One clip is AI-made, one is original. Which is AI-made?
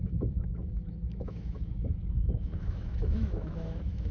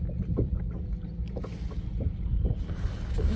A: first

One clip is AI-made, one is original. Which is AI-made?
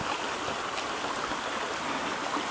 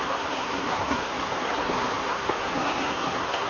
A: second